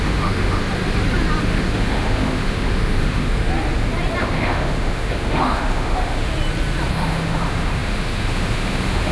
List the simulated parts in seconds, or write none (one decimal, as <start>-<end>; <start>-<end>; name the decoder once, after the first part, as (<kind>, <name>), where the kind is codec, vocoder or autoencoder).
0.0-0.6 (autoencoder, DAC-VAE); 1.4-3.5; 4.2-6.3; 6.9-9.1